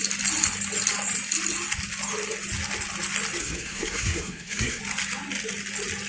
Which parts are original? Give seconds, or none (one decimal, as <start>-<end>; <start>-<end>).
0.0-3.4; 4.8-6.1